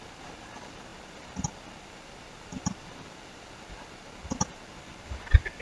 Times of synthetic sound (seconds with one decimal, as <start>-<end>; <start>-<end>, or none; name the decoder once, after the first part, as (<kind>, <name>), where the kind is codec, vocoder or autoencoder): 0.0-5.6 (vocoder, BigVGAN v2)